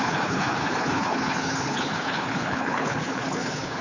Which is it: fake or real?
fake